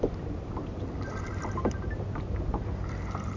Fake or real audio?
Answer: real